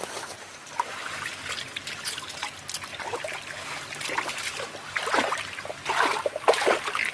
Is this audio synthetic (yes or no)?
no